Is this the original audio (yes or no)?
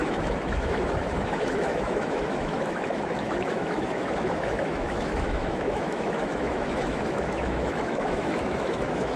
no